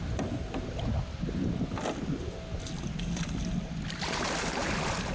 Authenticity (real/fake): real